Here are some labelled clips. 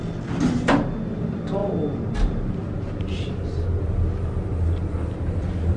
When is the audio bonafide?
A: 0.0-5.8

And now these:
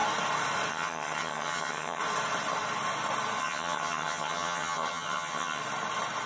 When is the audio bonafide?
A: 0.0-0.7; 2.0-3.4; 5.6-6.3